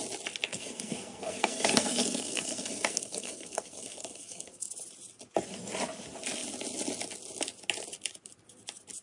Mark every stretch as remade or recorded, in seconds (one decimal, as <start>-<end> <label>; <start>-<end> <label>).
0.0-0.5 recorded; 0.5-4.7 remade; 4.7-9.0 recorded